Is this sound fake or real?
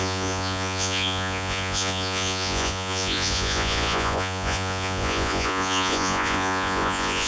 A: fake